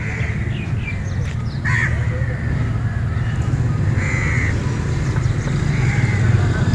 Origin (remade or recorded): recorded